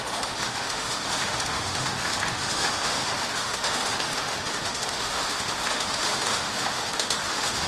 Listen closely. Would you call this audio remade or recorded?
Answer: remade